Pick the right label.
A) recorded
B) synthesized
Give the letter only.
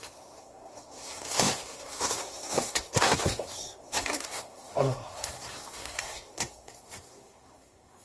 B